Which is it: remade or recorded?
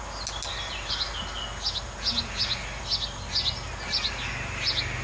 recorded